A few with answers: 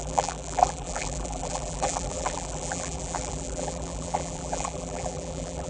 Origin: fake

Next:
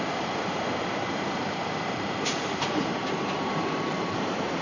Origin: fake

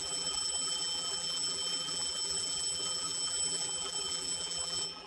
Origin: fake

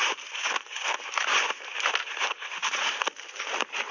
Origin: fake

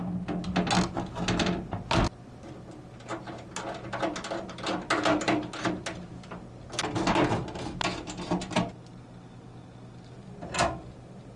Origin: real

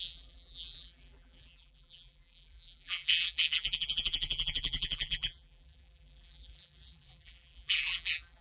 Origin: fake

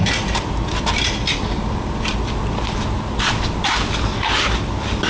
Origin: fake